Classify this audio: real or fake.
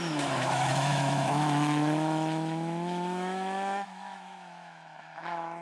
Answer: fake